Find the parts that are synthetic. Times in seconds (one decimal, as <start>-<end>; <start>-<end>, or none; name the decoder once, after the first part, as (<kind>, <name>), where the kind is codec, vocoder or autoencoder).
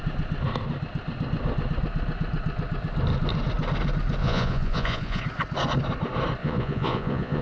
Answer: 4.2-5.2 (vocoder, Vocos); 6.4-7.4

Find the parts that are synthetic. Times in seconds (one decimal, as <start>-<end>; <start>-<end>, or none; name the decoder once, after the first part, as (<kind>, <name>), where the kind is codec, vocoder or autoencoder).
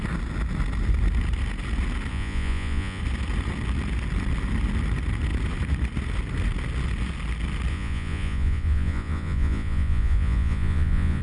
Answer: 2.1-3.0 (vocoder, Vocos); 7.7-11.2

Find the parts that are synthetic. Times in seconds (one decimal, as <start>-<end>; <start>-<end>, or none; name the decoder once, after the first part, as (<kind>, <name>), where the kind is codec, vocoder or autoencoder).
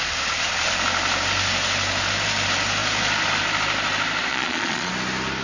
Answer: 4.3-4.9 (vocoder, Vocos)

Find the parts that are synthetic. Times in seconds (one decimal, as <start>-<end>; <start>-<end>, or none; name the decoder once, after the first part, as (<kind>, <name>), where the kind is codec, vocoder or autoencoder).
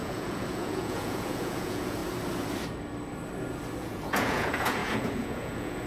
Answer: 0.0-2.0 (vocoder, Vocos); 3.8-5.9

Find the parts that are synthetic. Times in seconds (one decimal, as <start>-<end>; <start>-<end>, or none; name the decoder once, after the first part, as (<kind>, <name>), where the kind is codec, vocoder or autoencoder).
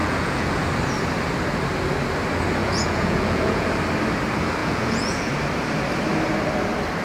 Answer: 0.0-0.6 (vocoder, Vocos); 2.6-3.7; 4.6-5.3